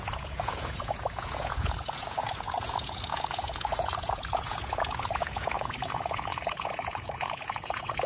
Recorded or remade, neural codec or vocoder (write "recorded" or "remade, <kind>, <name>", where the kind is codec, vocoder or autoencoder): remade, vocoder, Vocos